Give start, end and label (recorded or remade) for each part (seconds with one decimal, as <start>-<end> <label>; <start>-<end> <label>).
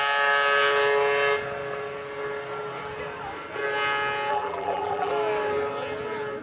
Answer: 0.0-4.3 recorded; 4.3-5.1 remade; 5.1-6.4 recorded